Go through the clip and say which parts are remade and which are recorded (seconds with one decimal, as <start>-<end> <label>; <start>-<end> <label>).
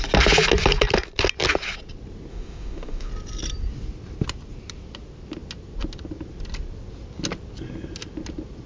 0.0-2.3 recorded; 2.3-3.1 remade; 3.1-8.7 recorded